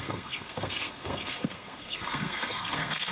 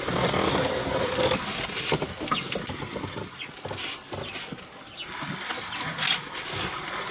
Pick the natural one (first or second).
second